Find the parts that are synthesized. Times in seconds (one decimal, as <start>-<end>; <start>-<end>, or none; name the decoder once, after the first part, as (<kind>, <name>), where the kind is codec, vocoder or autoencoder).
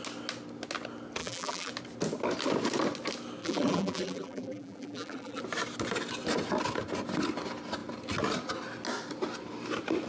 1.2-1.7 (vocoder, BigVGAN v2); 3.4-5.4